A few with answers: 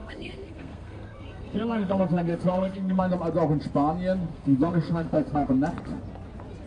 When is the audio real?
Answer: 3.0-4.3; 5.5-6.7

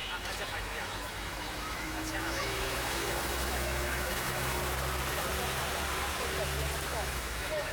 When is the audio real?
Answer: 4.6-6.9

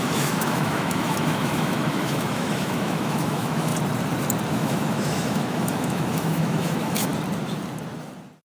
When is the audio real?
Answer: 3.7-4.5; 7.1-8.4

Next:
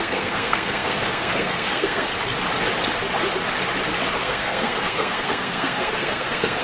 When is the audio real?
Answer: 2.1-4.2

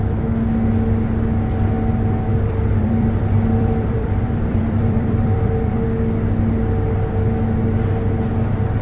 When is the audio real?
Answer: 0.0-2.3; 5.7-8.8

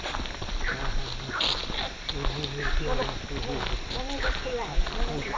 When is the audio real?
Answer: 0.0-5.4

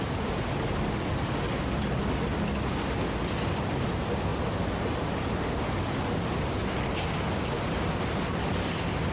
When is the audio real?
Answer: 0.0-9.1